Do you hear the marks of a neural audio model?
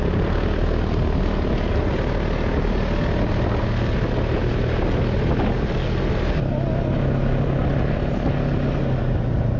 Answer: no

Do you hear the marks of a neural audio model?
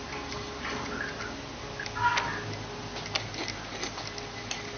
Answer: no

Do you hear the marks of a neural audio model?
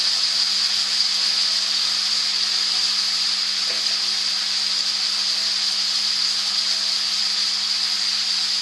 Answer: no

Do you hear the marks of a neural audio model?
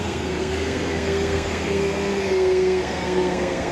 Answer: yes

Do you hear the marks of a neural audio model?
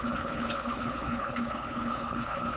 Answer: yes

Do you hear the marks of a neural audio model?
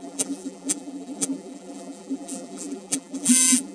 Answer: yes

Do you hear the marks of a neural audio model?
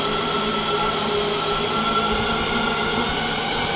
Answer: no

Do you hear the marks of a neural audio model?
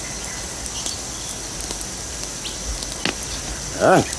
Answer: no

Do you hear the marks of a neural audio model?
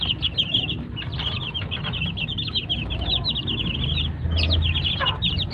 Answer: no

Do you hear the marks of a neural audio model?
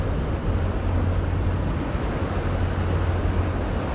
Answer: no